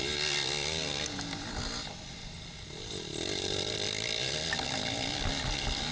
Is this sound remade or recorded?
recorded